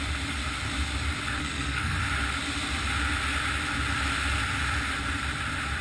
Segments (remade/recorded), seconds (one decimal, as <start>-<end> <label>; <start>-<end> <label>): 0.0-1.4 recorded; 1.4-2.0 remade; 2.0-5.8 recorded

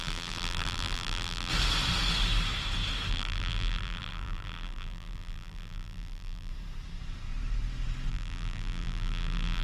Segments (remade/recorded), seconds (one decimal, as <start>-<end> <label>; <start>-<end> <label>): 0.0-1.5 remade; 1.5-3.1 recorded; 3.1-6.5 remade; 6.5-8.1 recorded; 8.1-9.6 remade

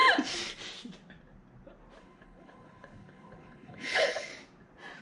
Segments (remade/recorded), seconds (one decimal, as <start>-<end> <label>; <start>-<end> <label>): 0.0-2.0 recorded; 2.0-4.3 remade; 4.3-5.0 recorded

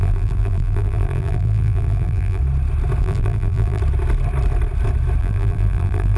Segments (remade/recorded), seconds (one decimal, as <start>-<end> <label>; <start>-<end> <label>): 0.0-2.4 remade; 2.4-3.0 recorded; 3.0-3.8 remade; 3.8-5.2 recorded; 5.2-6.2 remade

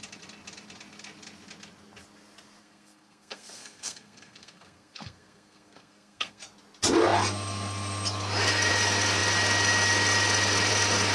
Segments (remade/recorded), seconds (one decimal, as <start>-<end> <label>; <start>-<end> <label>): 0.0-2.6 recorded; 2.6-6.4 remade; 6.4-11.1 recorded